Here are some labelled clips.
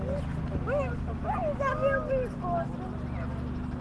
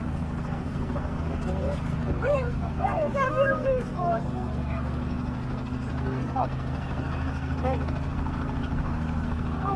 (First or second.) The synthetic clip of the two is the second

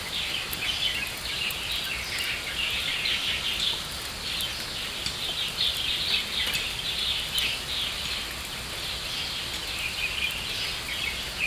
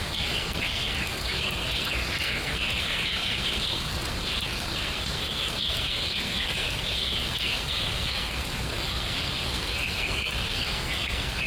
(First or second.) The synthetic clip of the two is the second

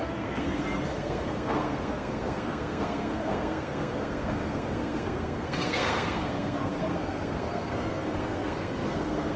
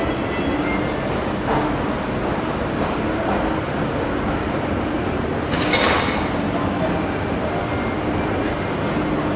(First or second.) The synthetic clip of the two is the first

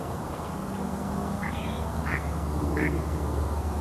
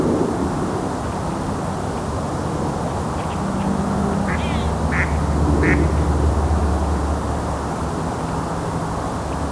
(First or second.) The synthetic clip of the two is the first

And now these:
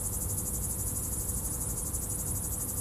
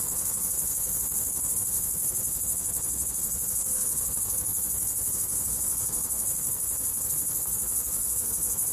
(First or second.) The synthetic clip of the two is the second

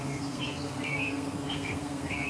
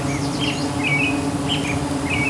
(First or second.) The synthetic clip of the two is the first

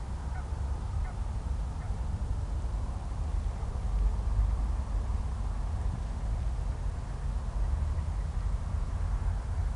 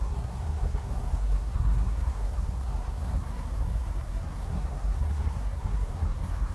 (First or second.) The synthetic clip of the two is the second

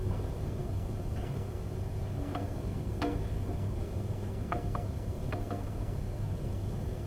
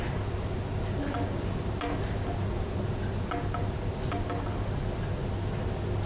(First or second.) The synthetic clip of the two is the first